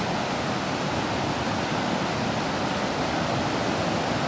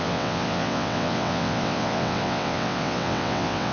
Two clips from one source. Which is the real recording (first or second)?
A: first